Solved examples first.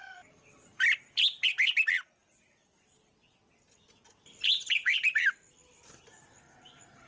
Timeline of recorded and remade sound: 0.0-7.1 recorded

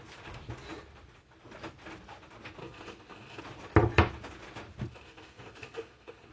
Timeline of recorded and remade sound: 0.0-2.6 recorded; 2.6-3.4 remade; 3.4-4.9 recorded; 4.9-6.3 remade